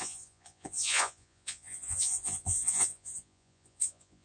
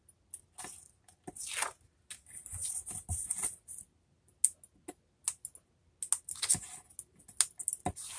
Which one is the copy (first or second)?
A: first